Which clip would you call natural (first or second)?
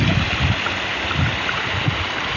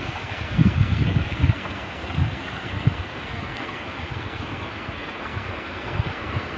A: first